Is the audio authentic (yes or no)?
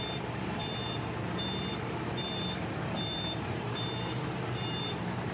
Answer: no